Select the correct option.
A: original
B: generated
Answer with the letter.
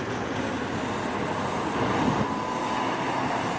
A